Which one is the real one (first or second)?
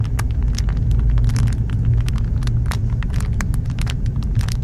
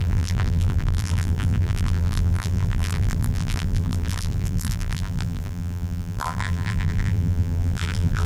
first